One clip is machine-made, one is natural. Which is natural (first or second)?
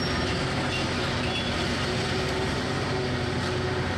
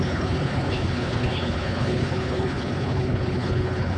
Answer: first